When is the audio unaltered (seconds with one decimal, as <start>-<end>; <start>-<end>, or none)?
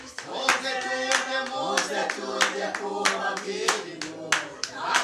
0.5-3.3; 3.9-4.6